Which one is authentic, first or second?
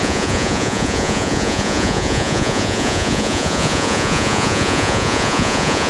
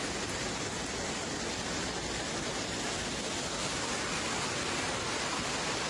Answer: second